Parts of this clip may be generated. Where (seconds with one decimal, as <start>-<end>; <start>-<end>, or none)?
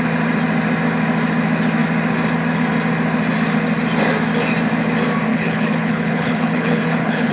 5.3-7.3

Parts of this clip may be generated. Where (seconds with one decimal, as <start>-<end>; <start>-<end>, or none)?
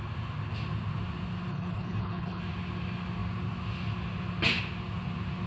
1.5-2.4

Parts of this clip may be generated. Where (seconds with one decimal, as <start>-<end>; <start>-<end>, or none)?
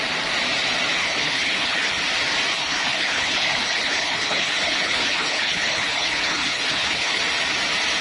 1.0-2.0; 2.5-7.2